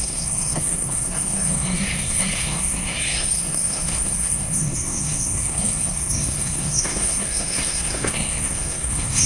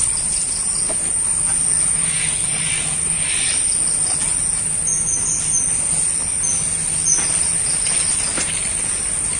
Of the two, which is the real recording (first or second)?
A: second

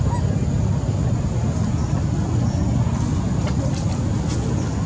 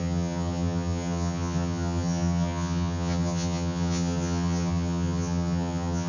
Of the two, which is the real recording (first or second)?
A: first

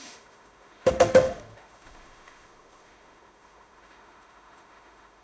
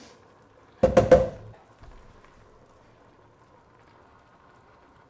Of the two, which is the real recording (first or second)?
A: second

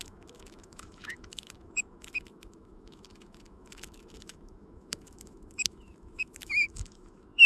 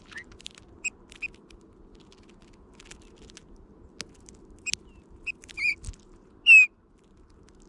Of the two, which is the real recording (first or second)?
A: second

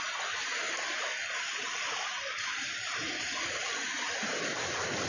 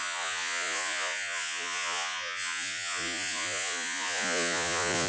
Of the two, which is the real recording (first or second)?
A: first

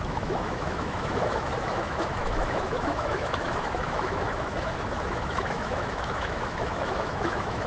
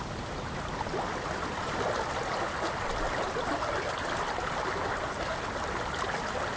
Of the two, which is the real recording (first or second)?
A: second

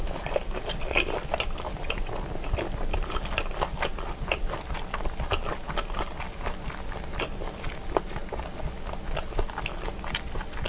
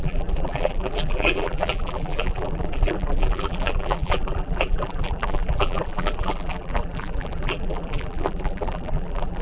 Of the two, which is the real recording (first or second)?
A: first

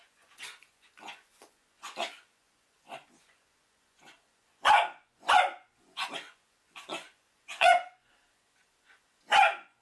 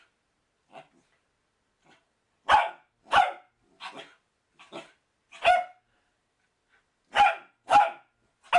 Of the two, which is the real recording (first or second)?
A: second